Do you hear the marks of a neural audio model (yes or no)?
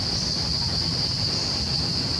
no